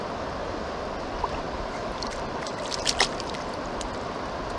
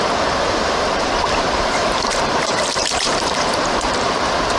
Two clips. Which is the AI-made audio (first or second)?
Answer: second